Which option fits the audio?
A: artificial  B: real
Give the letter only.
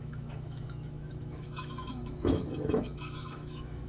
A